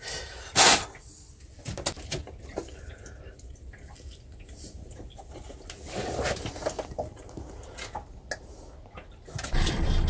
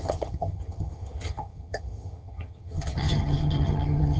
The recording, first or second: first